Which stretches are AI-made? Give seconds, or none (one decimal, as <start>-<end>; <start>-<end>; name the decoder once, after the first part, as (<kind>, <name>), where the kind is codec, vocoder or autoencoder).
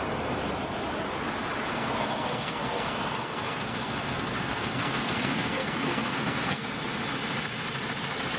1.7-6.7 (codec, SNAC)